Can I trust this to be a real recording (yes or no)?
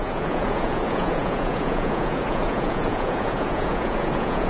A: no